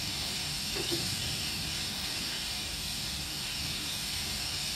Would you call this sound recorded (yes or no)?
no